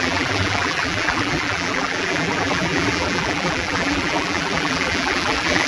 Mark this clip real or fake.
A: fake